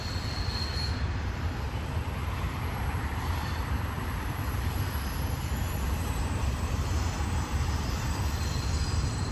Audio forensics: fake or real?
fake